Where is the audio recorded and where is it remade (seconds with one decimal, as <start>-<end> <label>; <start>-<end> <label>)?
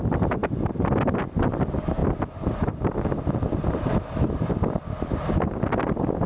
0.0-6.3 recorded